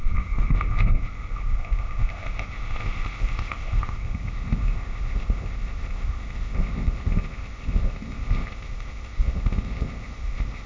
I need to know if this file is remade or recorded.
remade